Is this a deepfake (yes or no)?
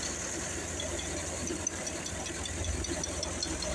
no